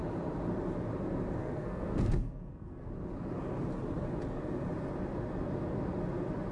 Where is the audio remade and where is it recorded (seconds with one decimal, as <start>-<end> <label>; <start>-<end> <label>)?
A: 0.0-1.4 recorded; 1.4-2.9 remade; 2.9-6.5 recorded